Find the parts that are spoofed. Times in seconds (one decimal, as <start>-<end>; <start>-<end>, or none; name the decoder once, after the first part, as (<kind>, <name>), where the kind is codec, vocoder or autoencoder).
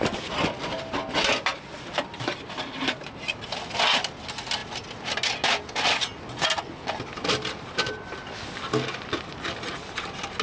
none